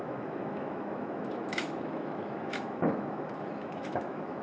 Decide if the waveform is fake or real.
fake